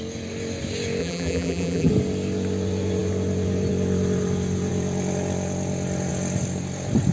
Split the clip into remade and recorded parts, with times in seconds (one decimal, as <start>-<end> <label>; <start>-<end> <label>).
0.0-1.0 recorded; 1.0-1.9 remade; 1.9-7.1 recorded